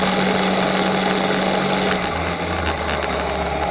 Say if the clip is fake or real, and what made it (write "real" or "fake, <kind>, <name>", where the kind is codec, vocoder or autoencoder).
real